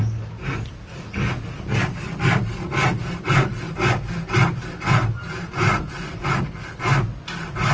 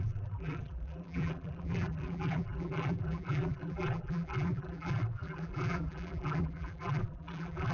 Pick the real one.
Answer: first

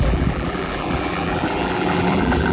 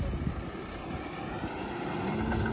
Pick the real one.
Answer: second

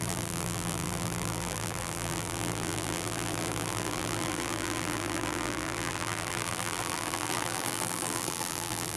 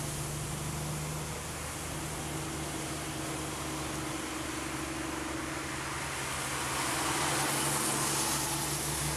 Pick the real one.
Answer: second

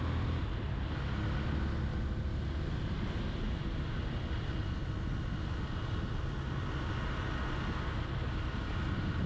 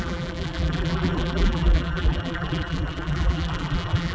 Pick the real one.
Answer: first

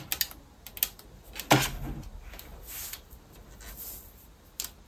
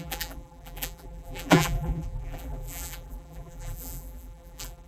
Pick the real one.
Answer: first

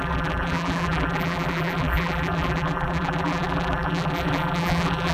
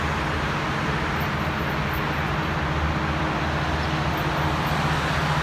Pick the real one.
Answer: second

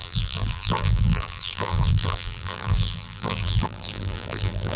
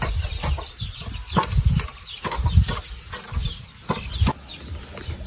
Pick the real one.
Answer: second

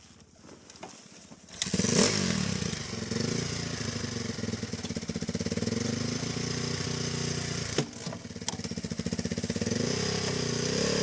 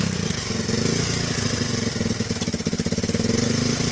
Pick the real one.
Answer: first